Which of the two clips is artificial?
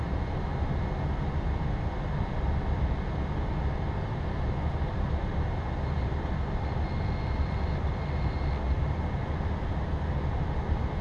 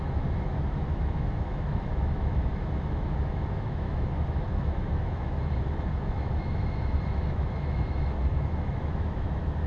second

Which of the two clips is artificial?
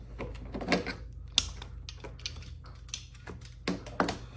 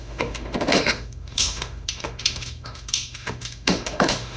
second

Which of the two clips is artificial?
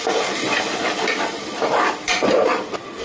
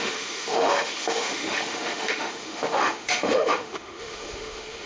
second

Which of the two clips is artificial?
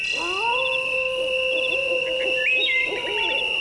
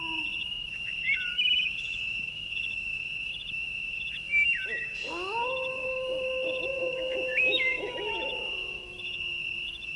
second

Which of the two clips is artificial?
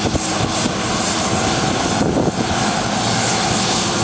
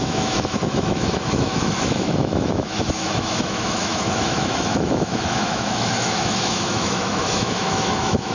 second